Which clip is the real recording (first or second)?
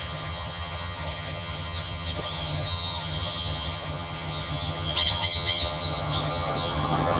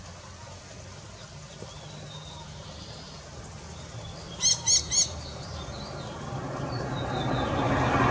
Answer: second